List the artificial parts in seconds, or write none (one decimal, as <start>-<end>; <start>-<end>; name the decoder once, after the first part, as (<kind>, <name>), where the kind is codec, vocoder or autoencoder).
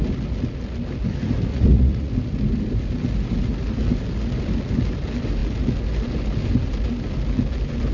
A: 1.5-2.1 (vocoder, Vocos)